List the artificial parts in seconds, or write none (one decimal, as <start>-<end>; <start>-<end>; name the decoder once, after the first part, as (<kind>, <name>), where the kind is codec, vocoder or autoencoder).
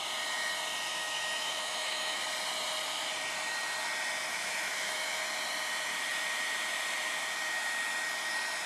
0.9-2.2 (autoencoder, DAC-VAE); 4.3-5.2